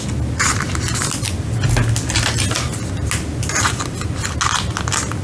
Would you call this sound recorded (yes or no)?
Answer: yes